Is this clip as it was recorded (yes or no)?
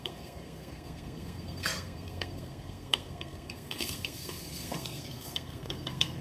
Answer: no